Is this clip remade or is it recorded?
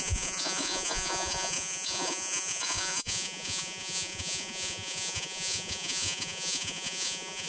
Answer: remade